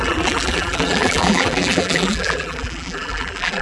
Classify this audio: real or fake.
fake